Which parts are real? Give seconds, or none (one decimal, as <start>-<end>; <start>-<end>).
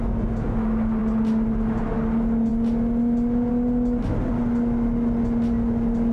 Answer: 0.0-6.1